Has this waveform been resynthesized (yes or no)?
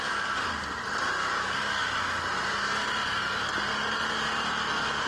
no